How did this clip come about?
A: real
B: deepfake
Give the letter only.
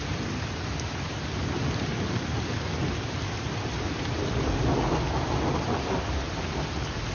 A